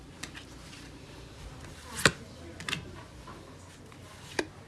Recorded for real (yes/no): yes